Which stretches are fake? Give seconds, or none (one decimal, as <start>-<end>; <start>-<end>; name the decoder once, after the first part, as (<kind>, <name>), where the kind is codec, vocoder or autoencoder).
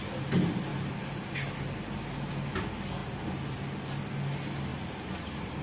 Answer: 4.7-5.6 (vocoder, BigVGAN v2)